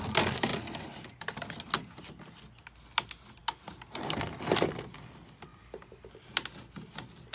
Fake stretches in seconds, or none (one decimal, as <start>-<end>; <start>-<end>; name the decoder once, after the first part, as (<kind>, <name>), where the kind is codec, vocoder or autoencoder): none